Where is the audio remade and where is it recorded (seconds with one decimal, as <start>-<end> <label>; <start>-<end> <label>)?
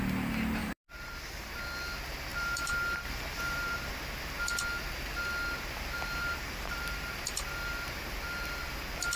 0.0-0.6 recorded; 0.6-1.5 remade; 1.5-2.3 recorded; 2.3-3.9 remade; 3.9-6.1 recorded; 6.1-6.8 remade; 6.8-9.2 recorded